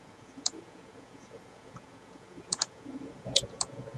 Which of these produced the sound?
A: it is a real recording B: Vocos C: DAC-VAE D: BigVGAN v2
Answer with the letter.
B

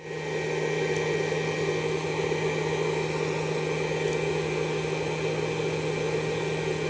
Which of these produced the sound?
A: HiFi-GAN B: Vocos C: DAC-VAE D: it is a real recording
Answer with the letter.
D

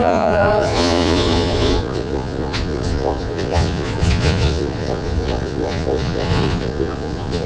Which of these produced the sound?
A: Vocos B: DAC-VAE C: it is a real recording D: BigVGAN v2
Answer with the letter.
A